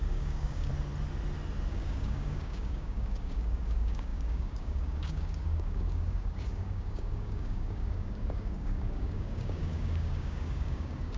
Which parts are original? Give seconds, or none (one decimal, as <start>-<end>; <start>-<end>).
0.7-1.7